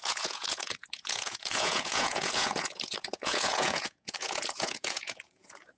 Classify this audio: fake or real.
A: fake